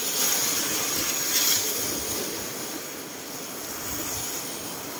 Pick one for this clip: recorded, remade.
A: recorded